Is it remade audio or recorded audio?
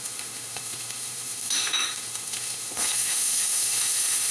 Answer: remade